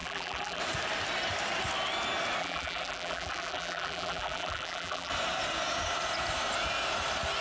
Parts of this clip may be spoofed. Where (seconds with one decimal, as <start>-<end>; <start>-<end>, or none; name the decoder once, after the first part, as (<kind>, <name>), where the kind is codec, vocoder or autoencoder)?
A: 0.0-0.6 (vocoder, BigVGAN v2); 2.4-5.1